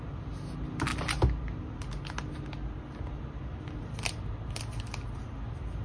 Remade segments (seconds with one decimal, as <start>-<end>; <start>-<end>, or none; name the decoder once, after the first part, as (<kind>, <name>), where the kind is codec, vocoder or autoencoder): none